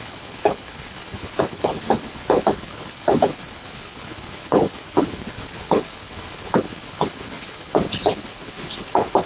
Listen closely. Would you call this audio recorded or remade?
remade